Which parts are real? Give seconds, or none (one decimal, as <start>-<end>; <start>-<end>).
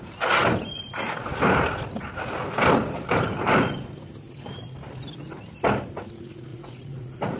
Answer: 0.0-6.5